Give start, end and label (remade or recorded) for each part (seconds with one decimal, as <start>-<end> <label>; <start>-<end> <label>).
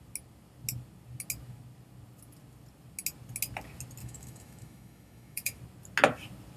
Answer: 0.0-4.0 recorded; 4.0-5.6 remade; 5.6-6.6 recorded